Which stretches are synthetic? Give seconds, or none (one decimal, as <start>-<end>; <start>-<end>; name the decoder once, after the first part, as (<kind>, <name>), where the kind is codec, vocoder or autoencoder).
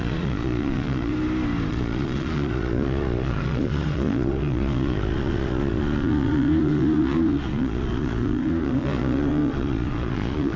0.0-1.1 (vocoder, Vocos); 1.7-10.6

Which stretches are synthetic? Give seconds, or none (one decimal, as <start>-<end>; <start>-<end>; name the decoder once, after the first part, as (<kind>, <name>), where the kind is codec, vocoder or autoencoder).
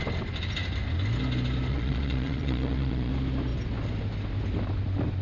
1.7-3.1 (vocoder, Vocos)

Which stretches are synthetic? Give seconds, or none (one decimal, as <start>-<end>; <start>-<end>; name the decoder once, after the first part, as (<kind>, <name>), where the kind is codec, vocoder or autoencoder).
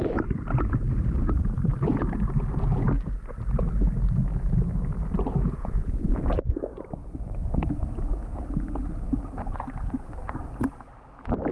5.6-6.2 (vocoder, Vocos)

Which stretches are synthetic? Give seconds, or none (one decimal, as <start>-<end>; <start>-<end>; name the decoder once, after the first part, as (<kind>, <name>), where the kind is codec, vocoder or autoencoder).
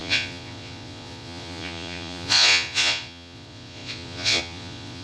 0.0-5.0 (vocoder, Vocos)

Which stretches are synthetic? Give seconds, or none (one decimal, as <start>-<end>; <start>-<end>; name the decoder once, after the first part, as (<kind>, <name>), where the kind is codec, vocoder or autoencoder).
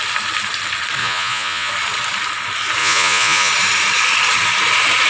1.0-1.7 (vocoder, Vocos); 2.8-3.5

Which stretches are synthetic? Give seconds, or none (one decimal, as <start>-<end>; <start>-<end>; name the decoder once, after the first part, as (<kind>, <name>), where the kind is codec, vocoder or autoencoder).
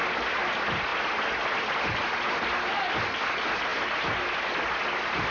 none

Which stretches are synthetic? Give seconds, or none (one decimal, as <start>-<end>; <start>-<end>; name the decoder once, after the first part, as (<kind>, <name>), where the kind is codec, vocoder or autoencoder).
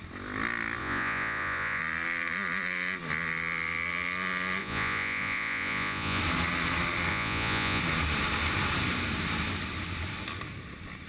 0.8-1.8 (vocoder, Vocos); 4.6-6.2; 7.1-7.8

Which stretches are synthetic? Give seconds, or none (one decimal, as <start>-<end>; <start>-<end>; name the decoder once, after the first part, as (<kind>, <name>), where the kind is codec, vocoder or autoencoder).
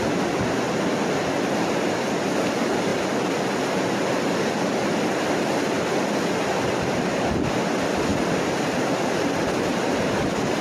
none